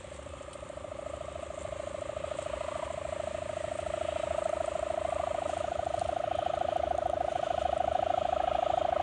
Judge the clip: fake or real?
real